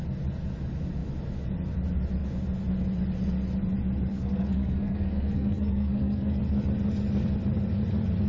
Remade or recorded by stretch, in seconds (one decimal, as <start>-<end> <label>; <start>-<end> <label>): 0.0-4.1 recorded; 4.1-6.4 remade; 6.4-8.3 recorded